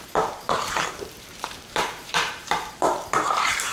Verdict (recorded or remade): remade